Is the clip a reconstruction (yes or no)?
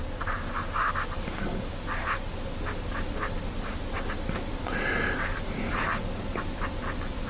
no